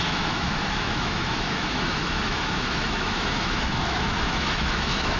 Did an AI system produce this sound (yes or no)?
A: yes